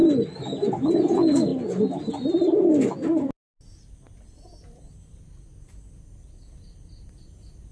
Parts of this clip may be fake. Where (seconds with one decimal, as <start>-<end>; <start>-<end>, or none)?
none